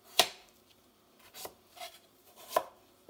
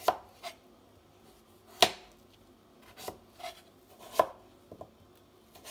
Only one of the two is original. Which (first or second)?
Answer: second